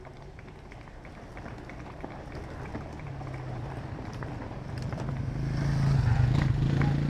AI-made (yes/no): no